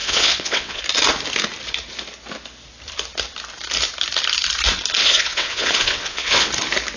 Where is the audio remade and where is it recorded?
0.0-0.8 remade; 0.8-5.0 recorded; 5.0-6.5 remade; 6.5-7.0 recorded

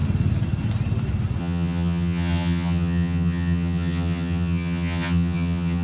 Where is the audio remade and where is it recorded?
0.0-1.4 recorded; 1.4-5.8 remade

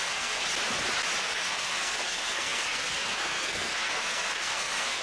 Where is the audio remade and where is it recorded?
0.0-0.4 remade; 0.4-1.2 recorded; 1.2-5.0 remade

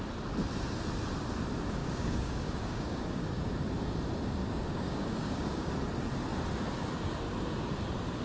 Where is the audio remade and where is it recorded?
0.0-1.8 recorded; 1.8-3.5 remade; 3.5-4.4 recorded; 4.4-5.7 remade; 5.7-8.2 recorded

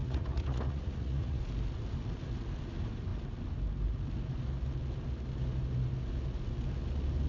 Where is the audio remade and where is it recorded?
0.0-1.5 remade; 1.5-7.3 recorded

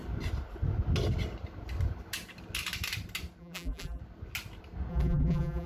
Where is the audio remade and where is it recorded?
0.0-3.4 recorded; 3.4-4.0 remade; 4.0-4.9 recorded; 4.9-5.7 remade

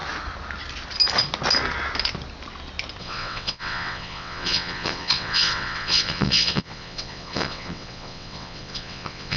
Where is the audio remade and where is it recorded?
0.0-3.0 recorded; 3.0-9.4 remade

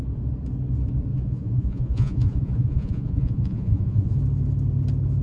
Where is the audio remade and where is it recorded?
0.0-1.1 recorded; 1.1-4.2 remade; 4.2-5.2 recorded